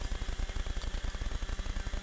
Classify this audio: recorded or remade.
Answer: recorded